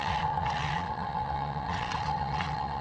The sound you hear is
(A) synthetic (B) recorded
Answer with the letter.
A